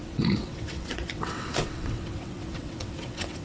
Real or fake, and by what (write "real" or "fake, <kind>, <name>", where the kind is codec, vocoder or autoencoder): fake, vocoder, WaveNeXt